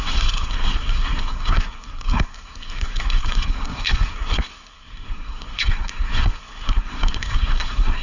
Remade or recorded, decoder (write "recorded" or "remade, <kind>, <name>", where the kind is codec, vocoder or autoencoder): remade, codec, SNAC